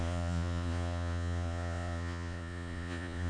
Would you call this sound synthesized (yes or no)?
yes